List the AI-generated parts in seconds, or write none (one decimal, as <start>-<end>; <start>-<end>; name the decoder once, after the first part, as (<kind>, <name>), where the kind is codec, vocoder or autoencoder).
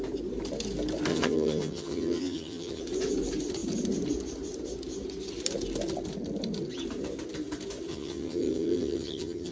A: 1.1-2.8 (vocoder, HiFi-GAN); 7.9-9.5